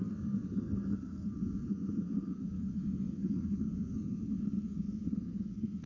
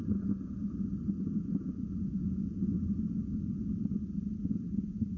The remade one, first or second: first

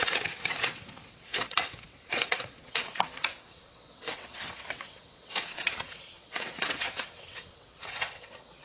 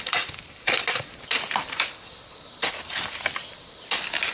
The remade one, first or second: first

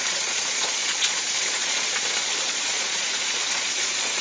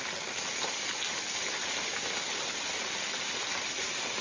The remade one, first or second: first